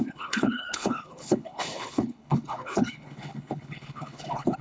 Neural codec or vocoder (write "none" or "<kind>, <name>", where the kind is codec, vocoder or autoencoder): codec, HILCodec